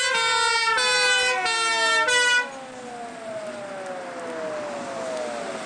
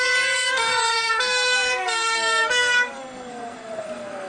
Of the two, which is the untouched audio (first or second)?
first